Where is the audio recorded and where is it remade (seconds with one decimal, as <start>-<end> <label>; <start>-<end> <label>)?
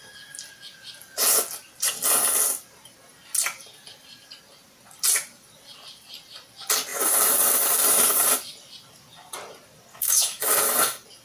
0.0-9.9 recorded; 9.9-10.4 remade; 10.4-11.2 recorded